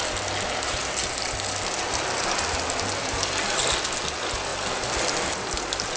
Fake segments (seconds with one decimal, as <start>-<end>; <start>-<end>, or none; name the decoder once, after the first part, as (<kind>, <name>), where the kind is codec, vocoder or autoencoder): none